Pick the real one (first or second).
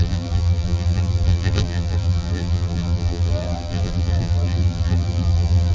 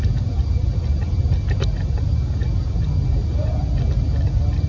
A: second